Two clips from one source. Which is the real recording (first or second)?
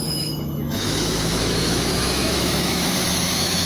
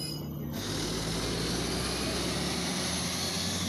second